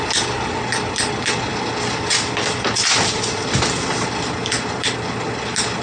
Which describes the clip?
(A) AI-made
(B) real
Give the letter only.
B